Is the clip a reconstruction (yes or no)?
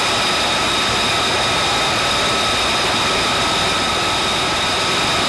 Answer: no